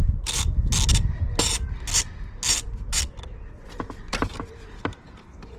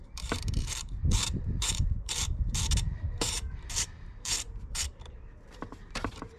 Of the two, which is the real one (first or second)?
first